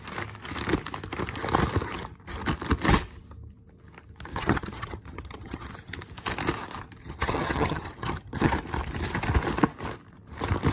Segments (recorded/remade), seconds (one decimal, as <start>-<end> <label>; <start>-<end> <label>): 0.0-4.3 recorded; 4.3-5.7 remade; 5.7-7.0 recorded; 7.0-8.5 remade; 8.5-10.7 recorded